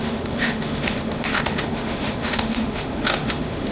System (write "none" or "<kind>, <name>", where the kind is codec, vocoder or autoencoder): autoencoder, DAC-VAE